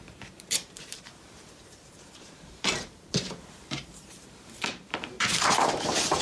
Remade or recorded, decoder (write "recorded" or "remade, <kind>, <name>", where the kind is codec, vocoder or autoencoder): remade, vocoder, BigVGAN v2